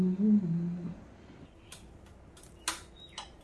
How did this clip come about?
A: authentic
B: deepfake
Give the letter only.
A